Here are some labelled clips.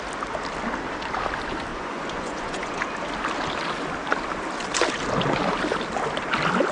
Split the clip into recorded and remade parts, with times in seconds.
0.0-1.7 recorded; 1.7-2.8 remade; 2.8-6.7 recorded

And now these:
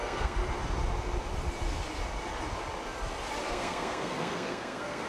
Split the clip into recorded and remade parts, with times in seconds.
0.0-0.4 remade; 0.4-3.5 recorded; 3.5-5.1 remade